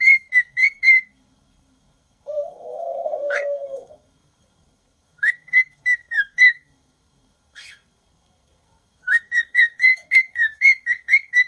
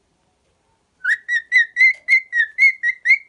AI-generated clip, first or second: first